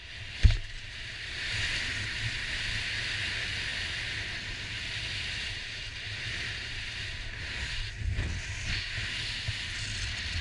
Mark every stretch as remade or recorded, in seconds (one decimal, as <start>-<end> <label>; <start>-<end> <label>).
0.0-10.4 recorded

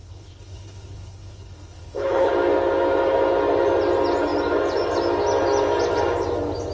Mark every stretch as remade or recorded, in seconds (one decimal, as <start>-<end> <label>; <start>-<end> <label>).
0.0-2.3 remade; 2.3-6.7 recorded

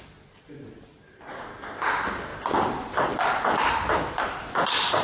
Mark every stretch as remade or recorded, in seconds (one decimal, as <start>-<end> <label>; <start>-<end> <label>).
0.0-5.0 recorded

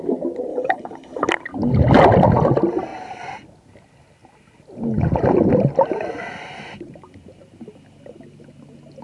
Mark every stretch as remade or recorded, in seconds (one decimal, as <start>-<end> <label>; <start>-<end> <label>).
0.0-0.5 recorded; 0.5-1.3 remade; 1.3-9.0 recorded